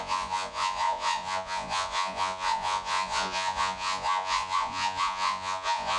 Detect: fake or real fake